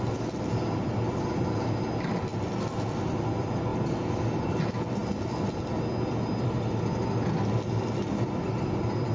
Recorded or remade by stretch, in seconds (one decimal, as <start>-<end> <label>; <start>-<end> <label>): 0.0-9.1 recorded